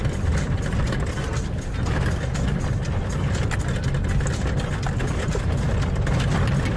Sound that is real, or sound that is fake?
real